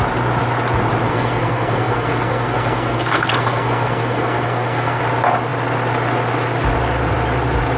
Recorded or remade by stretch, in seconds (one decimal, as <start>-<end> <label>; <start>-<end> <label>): 0.0-1.1 recorded; 1.1-5.0 remade; 5.0-7.8 recorded